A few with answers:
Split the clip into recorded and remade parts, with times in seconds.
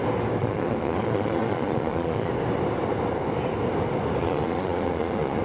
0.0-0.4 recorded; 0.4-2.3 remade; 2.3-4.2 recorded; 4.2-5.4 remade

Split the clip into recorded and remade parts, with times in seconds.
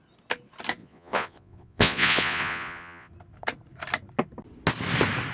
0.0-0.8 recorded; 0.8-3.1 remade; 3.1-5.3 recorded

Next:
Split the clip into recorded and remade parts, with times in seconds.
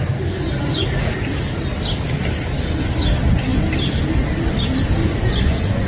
0.0-5.0 recorded; 5.0-5.9 remade